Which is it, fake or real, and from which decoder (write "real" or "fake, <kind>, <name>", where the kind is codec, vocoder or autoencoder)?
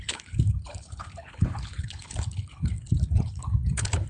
fake, codec, HILCodec